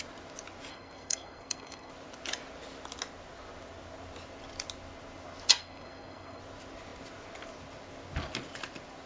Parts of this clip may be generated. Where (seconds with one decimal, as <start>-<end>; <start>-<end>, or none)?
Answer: 0.7-1.9; 5.6-6.4